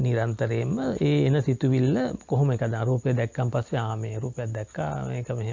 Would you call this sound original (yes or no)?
yes